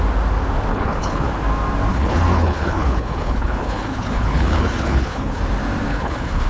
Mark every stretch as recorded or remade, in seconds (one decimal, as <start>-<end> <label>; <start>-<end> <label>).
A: 0.0-0.7 recorded; 0.7-1.3 remade; 1.3-1.9 recorded; 1.9-5.4 remade; 5.4-5.9 recorded; 5.9-6.5 remade